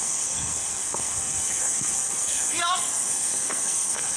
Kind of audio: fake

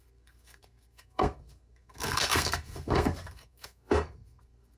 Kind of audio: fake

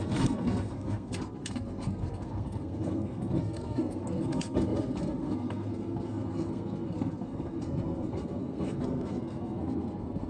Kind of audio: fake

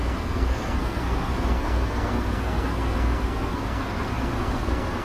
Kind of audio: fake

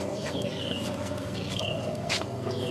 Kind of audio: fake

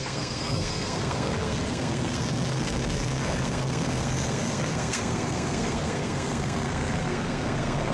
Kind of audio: fake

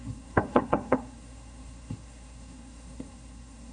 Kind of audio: fake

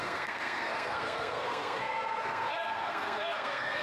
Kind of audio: fake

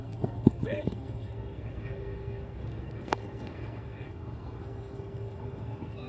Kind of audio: fake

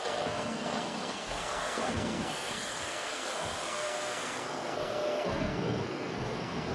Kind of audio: fake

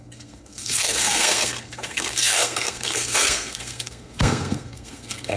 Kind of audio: fake